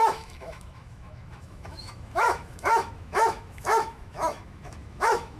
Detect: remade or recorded remade